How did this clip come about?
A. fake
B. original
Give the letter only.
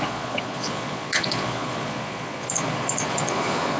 A